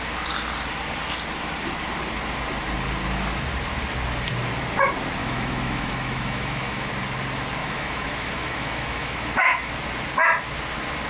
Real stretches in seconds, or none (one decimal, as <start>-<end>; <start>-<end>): 0.0-5.2; 6.9-7.6; 9.7-11.1